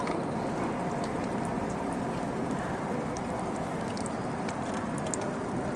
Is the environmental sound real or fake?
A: real